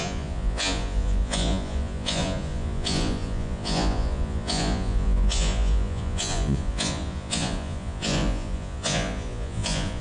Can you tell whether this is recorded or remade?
remade